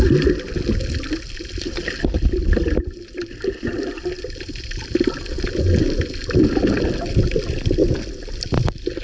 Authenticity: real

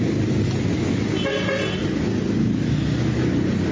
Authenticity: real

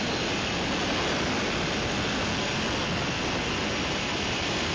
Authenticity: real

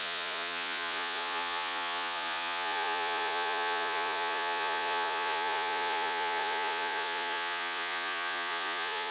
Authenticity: fake